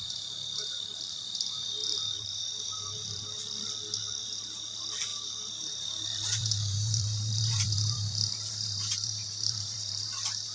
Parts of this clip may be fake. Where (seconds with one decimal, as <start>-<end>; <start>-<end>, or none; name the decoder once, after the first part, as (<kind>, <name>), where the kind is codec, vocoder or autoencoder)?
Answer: 0.0-3.4 (vocoder, BigVGAN v2); 4.2-10.5